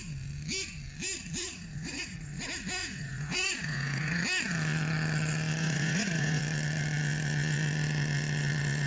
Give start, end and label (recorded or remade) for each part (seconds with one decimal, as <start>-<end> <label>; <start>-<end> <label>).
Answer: 0.0-1.5 recorded; 1.5-2.4 remade; 2.4-2.8 recorded; 2.8-4.2 remade; 4.2-5.6 recorded; 5.6-6.4 remade; 6.4-8.9 recorded